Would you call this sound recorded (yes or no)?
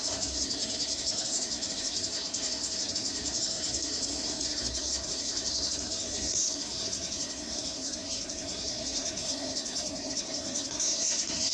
no